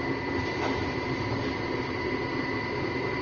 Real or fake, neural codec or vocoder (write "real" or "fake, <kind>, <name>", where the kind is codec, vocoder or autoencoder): real